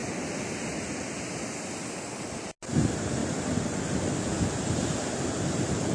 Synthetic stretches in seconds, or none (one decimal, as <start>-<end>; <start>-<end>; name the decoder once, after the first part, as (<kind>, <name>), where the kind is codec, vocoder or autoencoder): none